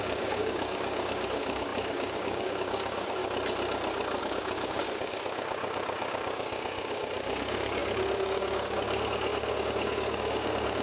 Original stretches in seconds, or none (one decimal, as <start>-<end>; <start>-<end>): 3.2-4.2